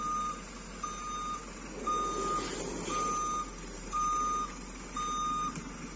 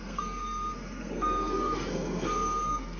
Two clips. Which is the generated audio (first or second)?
second